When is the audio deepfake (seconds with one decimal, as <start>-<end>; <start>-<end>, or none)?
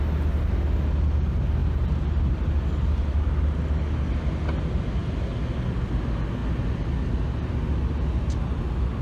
none